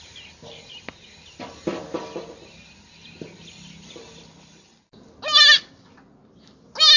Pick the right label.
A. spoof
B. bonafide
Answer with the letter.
B